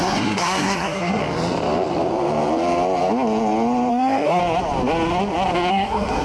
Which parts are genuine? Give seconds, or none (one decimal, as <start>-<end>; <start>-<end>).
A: 1.2-3.9; 4.4-5.7